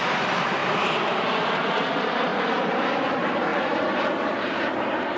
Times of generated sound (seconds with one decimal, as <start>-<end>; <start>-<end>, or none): 0.0-0.6; 1.3-5.2